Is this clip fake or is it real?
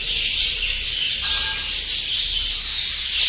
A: real